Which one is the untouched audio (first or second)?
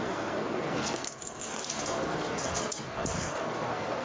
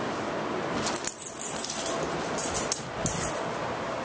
second